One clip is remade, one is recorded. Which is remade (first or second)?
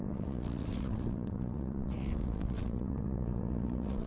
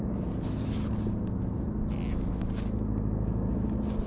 first